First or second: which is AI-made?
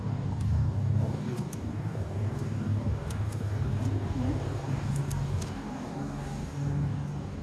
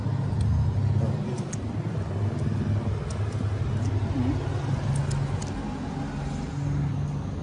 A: first